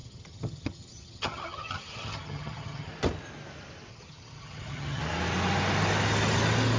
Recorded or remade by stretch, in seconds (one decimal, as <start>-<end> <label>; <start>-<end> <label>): 0.0-2.9 remade; 2.9-3.9 recorded; 3.9-5.0 remade; 5.0-6.8 recorded